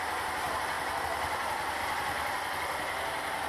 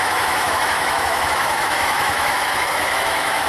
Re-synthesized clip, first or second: second